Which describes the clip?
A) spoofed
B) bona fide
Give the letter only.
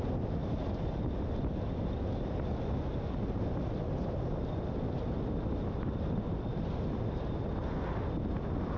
B